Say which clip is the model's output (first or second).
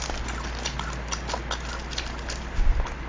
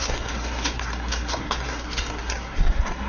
second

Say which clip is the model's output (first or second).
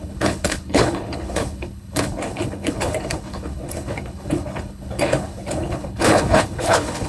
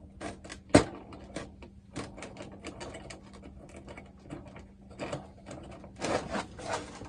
first